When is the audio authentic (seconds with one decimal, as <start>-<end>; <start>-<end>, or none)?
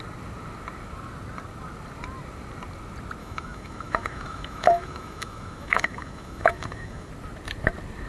0.0-3.2; 7.1-8.1